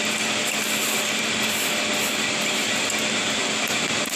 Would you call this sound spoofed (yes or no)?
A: no